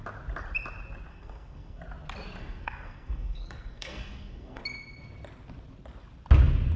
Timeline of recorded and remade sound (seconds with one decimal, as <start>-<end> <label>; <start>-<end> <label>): 0.0-1.1 recorded; 1.1-1.8 remade; 1.8-2.4 recorded; 2.4-4.6 remade; 4.6-6.8 recorded